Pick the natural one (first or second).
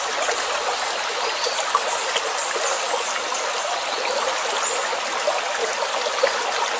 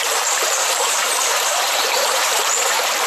first